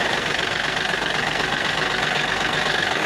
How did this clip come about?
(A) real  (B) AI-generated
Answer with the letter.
B